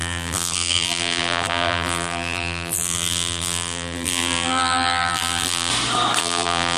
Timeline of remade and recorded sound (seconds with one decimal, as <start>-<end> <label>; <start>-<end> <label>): 0.0-5.7 remade; 5.7-6.2 recorded; 6.2-6.8 remade

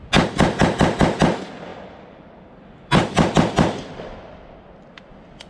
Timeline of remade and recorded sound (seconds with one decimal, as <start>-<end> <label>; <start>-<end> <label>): 0.0-1.7 recorded; 1.7-4.2 remade; 4.2-5.5 recorded